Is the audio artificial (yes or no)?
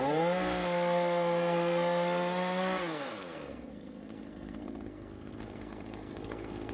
yes